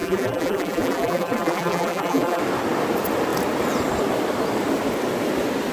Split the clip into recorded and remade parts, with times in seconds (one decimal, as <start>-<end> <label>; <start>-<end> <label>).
0.0-2.4 remade; 2.4-5.7 recorded